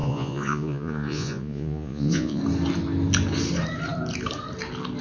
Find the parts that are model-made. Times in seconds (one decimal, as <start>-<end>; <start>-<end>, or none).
0.0-2.4